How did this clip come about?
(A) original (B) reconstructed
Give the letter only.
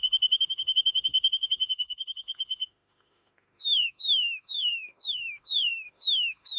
B